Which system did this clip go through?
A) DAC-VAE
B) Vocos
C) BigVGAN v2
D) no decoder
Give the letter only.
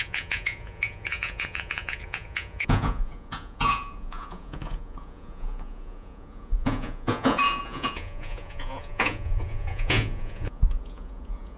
B